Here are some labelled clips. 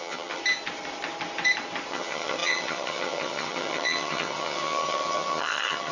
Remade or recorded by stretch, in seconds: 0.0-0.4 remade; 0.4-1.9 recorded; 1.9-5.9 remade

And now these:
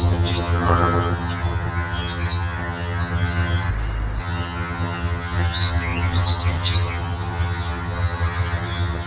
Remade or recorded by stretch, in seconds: 0.0-3.7 remade; 3.7-4.2 recorded; 4.2-9.1 remade

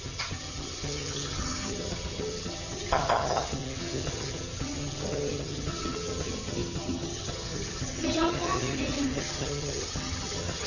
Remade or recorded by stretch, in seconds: 0.0-10.7 remade

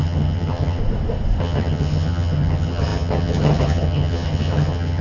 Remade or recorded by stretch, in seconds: 0.0-0.8 remade; 0.8-1.4 recorded; 1.4-5.0 remade

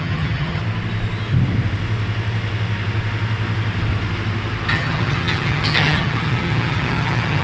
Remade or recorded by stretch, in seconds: 0.0-0.6 remade; 0.6-4.7 recorded; 4.7-7.4 remade

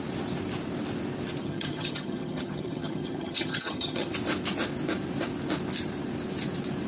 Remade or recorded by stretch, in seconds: 0.0-1.4 recorded; 1.4-4.1 remade; 4.1-6.9 recorded

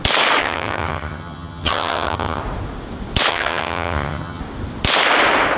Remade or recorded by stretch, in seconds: 0.0-0.4 recorded; 0.4-2.4 remade; 2.4-3.3 recorded; 3.3-4.4 remade; 4.4-5.6 recorded